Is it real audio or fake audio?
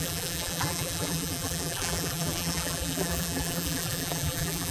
fake